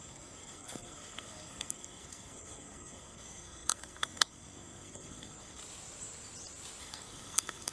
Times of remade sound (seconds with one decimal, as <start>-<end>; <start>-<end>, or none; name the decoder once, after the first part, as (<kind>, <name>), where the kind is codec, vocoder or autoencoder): 0.0-5.6 (codec, SNAC); 6.8-7.7

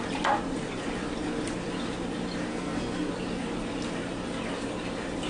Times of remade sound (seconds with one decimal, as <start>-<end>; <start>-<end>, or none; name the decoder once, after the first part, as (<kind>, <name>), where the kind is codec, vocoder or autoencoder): 2.5-3.1 (codec, SNAC)

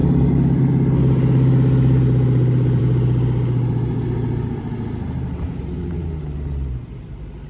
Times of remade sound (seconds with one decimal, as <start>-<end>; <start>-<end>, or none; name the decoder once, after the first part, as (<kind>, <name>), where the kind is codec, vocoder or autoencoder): none

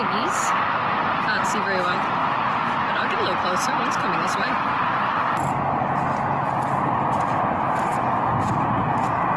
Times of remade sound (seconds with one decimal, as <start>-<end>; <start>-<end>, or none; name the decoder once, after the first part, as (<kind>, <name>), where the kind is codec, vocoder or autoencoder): 2.2-3.2 (vocoder, Vocos)

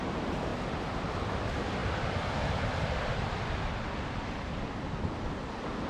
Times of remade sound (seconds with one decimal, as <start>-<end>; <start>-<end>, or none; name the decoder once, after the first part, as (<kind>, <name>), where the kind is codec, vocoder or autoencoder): 0.0-1.8 (vocoder, BigVGAN v2); 2.5-5.9

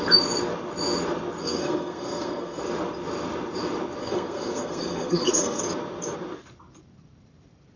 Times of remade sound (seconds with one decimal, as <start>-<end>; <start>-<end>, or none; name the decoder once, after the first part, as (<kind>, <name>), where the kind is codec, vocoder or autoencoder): 1.4-2.6 (codec, SNAC); 4.0-5.6